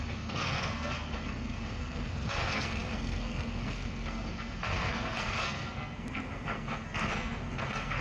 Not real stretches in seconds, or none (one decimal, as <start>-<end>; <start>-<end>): 0.0-8.0